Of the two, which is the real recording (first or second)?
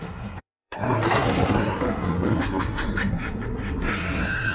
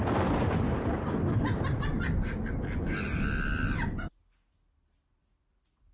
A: second